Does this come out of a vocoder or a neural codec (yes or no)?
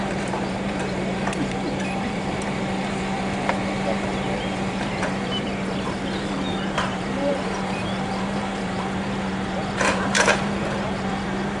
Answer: yes